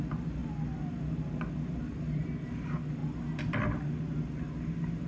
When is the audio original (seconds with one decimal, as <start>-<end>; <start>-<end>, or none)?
0.0-5.1

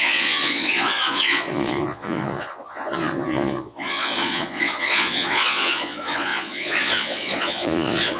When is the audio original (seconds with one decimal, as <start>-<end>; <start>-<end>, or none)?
none

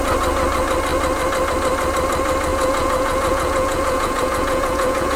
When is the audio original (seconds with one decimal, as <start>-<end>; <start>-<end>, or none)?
0.0-2.5

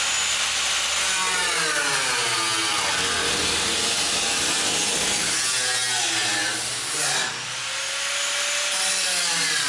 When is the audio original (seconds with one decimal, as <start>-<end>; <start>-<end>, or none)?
0.0-9.7